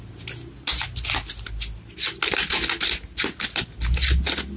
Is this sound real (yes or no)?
yes